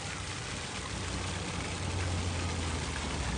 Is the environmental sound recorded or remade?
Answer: recorded